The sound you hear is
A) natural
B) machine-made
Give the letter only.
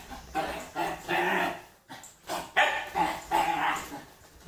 A